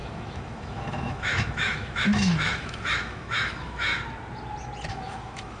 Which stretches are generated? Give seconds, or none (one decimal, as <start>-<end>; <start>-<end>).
0.0-3.9; 4.9-5.6